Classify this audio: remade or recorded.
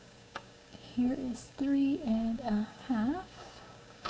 remade